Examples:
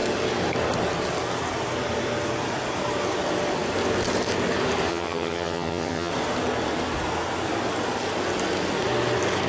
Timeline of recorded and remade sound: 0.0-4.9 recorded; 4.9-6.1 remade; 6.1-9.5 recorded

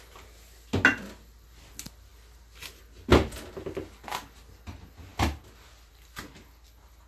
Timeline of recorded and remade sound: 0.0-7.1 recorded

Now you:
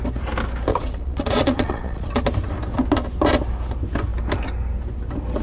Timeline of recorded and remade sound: 0.0-0.7 recorded; 0.7-2.1 remade; 2.1-5.4 recorded

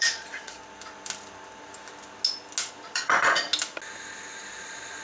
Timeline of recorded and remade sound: 0.0-0.6 remade; 0.6-2.7 recorded; 2.7-3.5 remade; 3.5-4.6 recorded; 4.6-5.0 remade

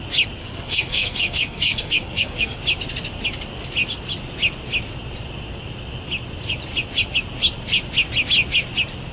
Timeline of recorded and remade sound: 0.0-0.4 recorded; 0.4-2.6 remade; 2.6-9.1 recorded

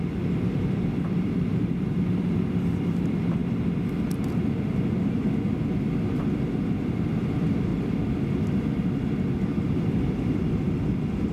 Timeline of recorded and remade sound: 0.0-3.4 remade; 3.4-6.8 recorded; 6.8-7.7 remade; 7.7-9.0 recorded; 9.0-11.3 remade